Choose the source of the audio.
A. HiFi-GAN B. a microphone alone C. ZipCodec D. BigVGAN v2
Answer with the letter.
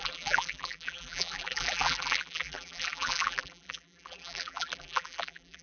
D